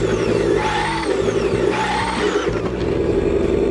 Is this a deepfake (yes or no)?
no